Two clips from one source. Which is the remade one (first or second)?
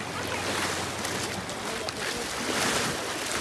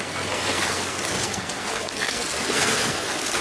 second